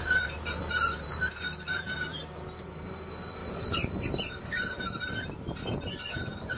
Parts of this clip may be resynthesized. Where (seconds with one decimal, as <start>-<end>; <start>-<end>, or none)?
0.0-1.1; 1.7-2.2; 3.4-4.5